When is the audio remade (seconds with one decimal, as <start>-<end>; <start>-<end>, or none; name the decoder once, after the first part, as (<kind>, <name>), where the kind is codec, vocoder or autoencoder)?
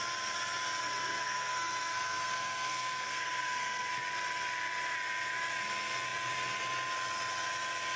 0.8-3.9 (codec, SNAC)